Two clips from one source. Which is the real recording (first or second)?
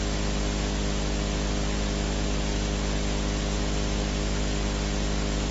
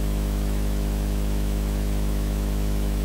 first